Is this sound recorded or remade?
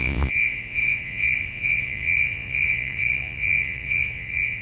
remade